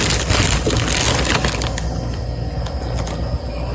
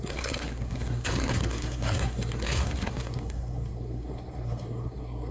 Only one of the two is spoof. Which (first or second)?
second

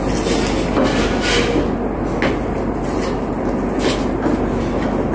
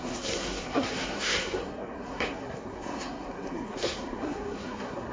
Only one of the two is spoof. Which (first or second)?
second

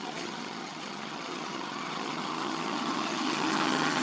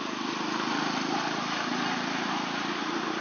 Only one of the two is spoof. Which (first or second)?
first